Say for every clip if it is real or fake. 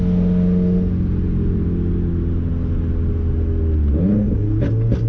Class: real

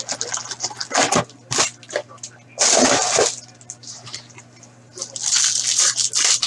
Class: real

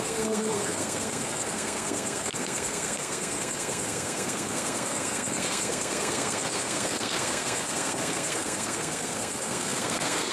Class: fake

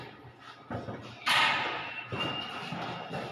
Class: real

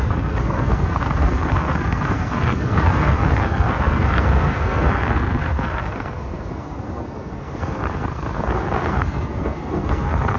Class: fake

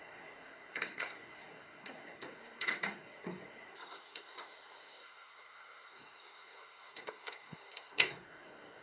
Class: fake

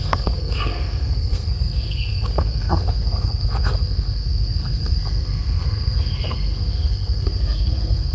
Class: fake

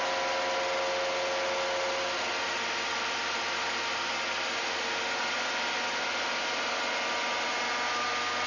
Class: real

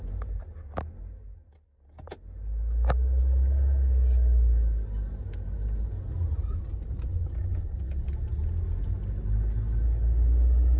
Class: real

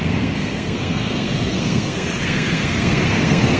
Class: fake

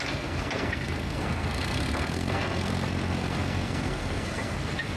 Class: fake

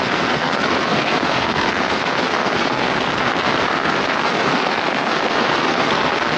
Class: fake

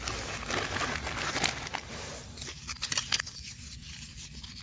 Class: real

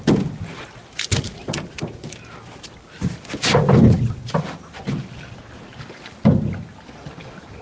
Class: real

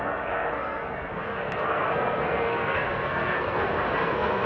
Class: fake